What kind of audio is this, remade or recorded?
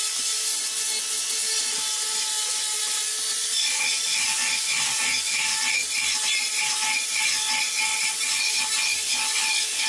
recorded